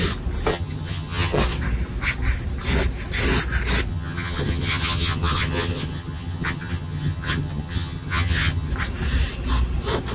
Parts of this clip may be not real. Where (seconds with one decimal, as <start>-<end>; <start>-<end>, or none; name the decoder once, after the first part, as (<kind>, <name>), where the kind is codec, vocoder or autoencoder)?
0.5-1.4 (vocoder, HiFi-GAN); 3.9-8.7